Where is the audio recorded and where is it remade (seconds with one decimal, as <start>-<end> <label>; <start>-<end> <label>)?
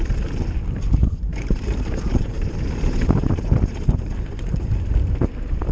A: 0.0-1.3 recorded; 1.3-4.7 remade; 4.7-5.7 recorded